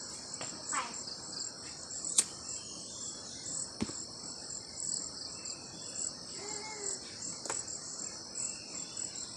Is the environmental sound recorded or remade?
recorded